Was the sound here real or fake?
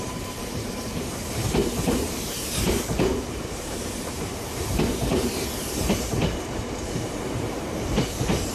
fake